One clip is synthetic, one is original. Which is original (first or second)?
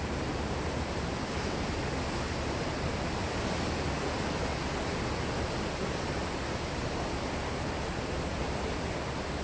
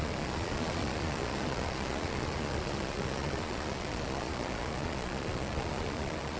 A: first